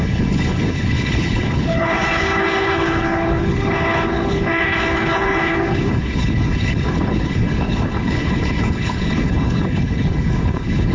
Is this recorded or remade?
remade